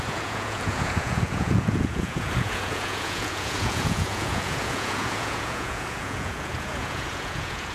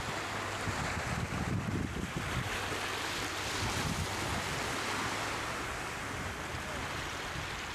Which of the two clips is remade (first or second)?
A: first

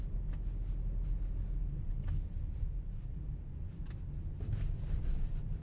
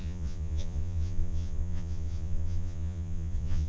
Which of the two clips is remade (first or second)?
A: second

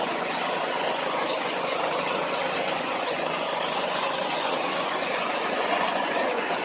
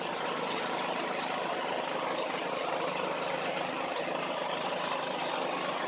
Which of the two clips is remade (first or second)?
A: first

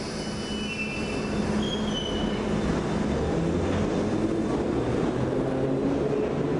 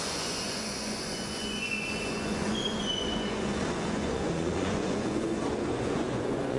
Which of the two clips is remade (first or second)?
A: second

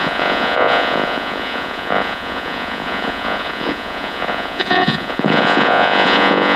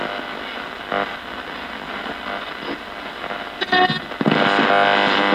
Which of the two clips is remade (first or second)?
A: first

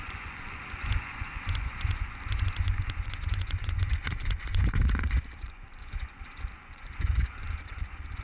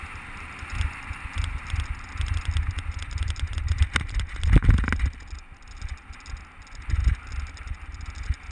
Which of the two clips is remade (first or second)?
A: first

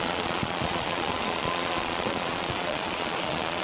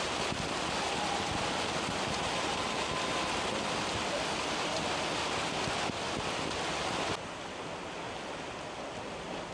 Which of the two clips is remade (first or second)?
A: first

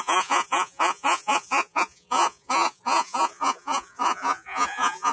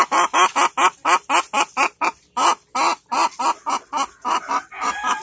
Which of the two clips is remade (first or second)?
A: first